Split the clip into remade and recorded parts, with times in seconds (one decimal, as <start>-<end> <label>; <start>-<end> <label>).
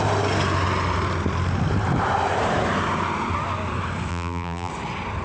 0.0-4.1 recorded; 4.1-4.7 remade; 4.7-5.2 recorded